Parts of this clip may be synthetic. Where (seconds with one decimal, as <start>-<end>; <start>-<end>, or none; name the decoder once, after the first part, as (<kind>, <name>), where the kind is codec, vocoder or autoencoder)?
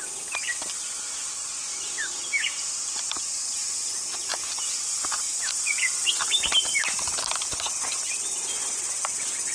none